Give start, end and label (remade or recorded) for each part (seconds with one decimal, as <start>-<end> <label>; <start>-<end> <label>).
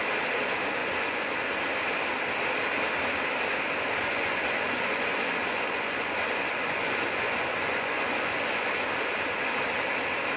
0.0-0.8 recorded; 0.8-1.4 remade; 1.4-4.0 recorded; 4.0-8.7 remade; 8.7-10.4 recorded